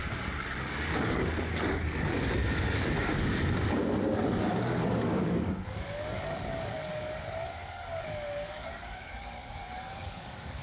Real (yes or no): no